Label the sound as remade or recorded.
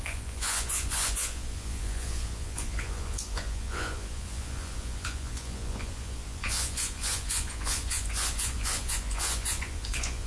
remade